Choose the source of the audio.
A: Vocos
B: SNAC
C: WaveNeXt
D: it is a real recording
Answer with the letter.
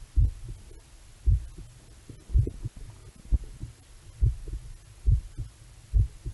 D